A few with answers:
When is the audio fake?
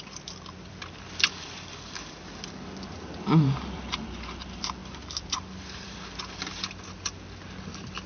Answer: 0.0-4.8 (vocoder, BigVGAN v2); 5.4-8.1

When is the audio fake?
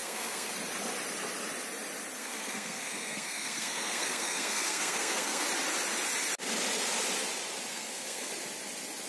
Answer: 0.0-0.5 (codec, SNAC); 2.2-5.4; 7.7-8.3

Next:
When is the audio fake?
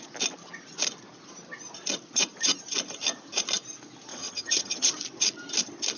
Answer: 4.1-4.9 (vocoder, HiFi-GAN)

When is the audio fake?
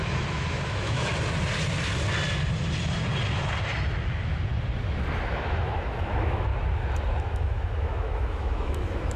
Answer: 0.0-1.1 (autoencoder, DAC-VAE); 5.3-6.5; 7.2-9.2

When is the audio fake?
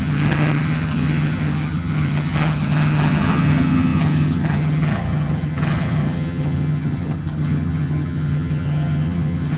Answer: 0.0-9.6 (vocoder, HiFi-GAN)